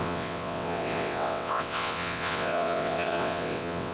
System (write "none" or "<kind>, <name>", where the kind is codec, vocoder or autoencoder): vocoder, WaveNeXt